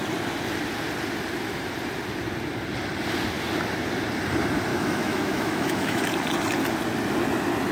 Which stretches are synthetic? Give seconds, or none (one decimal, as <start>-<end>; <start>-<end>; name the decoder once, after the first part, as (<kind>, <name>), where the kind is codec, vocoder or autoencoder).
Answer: 4.7-6.0 (autoencoder, DAC-VAE)